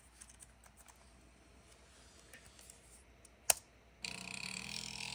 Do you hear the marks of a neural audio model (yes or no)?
no